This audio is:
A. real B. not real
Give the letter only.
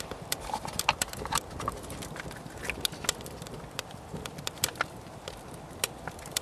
A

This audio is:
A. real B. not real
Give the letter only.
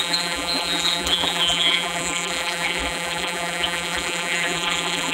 B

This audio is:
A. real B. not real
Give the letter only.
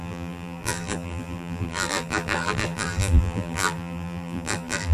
B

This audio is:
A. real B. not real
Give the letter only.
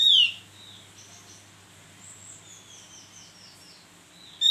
A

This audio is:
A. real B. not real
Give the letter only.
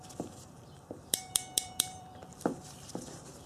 B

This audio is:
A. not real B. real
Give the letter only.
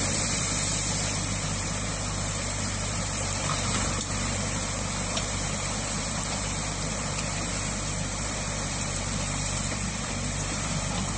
A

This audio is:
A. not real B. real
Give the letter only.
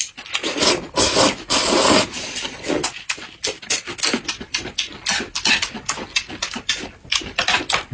B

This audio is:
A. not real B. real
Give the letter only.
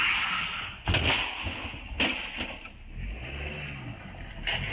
B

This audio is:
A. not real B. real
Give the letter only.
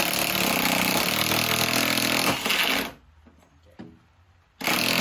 B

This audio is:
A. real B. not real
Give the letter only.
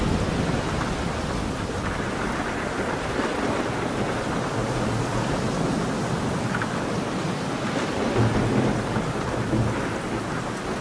A